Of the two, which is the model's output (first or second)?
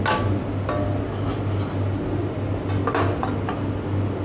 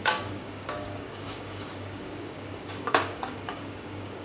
second